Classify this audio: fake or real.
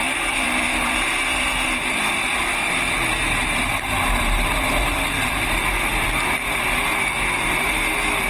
fake